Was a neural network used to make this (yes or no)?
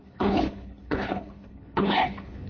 yes